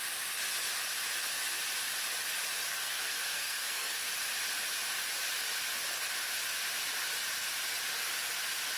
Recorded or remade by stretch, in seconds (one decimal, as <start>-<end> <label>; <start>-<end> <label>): 0.0-2.7 recorded; 2.7-4.1 remade; 4.1-8.8 recorded